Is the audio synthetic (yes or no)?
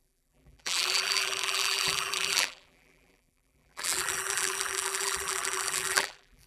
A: yes